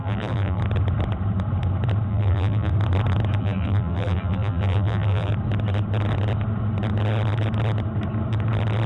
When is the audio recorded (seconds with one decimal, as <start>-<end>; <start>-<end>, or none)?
0.6-2.1; 2.7-3.4; 5.3-8.9

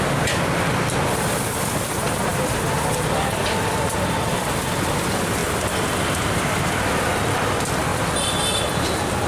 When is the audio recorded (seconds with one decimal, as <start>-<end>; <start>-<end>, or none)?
0.0-5.4; 6.6-7.9; 8.6-9.3

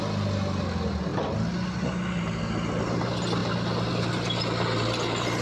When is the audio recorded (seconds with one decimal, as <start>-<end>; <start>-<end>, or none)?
0.0-5.4

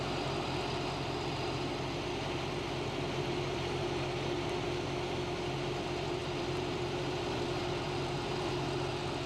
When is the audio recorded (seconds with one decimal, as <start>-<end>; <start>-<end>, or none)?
0.0-6.2; 8.9-9.3

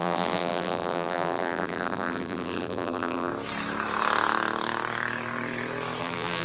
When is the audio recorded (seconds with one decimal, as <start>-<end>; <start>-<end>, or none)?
3.3-6.0

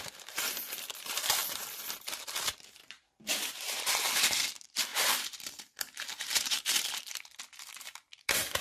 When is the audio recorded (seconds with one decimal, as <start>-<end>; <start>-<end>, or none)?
none